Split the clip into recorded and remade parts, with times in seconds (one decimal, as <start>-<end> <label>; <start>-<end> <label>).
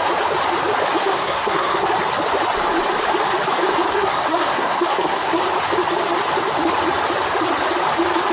0.0-1.0 recorded; 1.0-1.9 remade; 1.9-3.9 recorded; 3.9-5.4 remade; 5.4-8.3 recorded